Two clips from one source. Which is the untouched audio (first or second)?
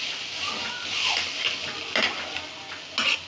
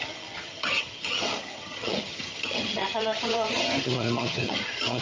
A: first